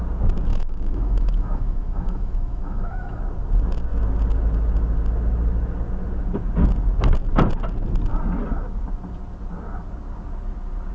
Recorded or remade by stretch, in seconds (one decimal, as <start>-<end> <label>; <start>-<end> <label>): 0.0-0.5 recorded; 0.5-3.2 remade; 3.2-10.9 recorded